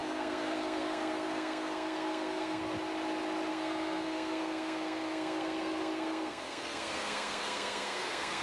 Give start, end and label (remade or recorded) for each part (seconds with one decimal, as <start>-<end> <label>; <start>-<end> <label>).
0.0-2.6 remade; 2.6-3.5 recorded; 3.5-8.4 remade